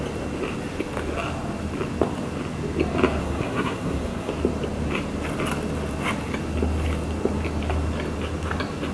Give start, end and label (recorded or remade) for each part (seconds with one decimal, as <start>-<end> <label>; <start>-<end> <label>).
0.0-3.2 recorded; 3.2-4.3 remade; 4.3-8.9 recorded